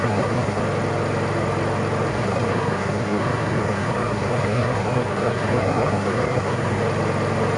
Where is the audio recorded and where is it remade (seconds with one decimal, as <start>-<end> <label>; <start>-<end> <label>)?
0.0-0.6 remade; 0.6-2.1 recorded; 2.1-6.8 remade; 6.8-7.6 recorded